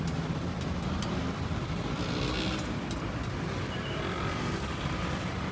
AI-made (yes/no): no